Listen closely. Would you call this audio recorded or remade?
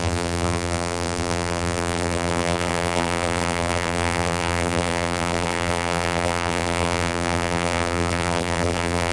remade